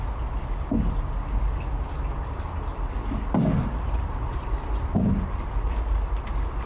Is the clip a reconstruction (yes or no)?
no